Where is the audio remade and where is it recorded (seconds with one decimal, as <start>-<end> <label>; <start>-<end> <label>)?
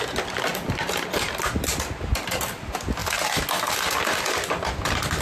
0.0-5.2 recorded